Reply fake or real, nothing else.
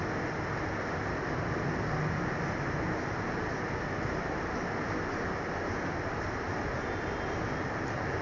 real